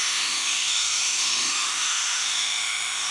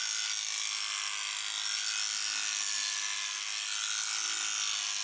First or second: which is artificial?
first